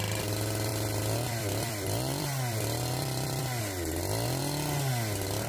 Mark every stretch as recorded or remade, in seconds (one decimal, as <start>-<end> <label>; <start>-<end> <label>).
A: 0.0-0.7 recorded; 0.7-3.6 remade; 3.6-5.5 recorded